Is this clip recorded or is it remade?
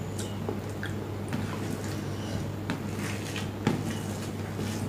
recorded